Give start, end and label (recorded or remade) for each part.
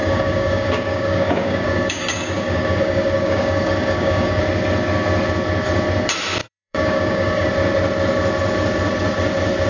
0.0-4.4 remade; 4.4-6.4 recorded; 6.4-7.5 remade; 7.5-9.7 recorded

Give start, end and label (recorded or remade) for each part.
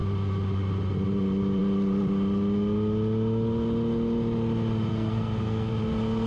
0.0-4.9 recorded; 4.9-5.7 remade; 5.7-6.3 recorded